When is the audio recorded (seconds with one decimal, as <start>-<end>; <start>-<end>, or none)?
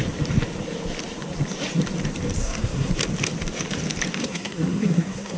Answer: 0.0-2.4; 2.9-4.2